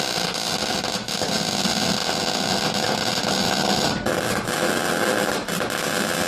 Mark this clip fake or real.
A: real